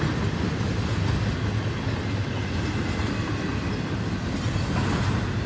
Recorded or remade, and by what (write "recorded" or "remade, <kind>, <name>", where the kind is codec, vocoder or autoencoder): recorded